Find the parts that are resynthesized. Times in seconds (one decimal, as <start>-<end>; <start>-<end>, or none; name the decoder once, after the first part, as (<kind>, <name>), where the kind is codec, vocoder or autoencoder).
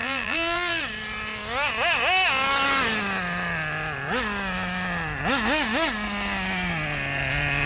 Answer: 0.0-0.8 (vocoder, BigVGAN v2)